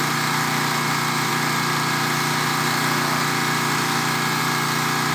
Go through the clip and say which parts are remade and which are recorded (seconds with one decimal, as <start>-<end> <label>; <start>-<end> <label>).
0.0-5.1 recorded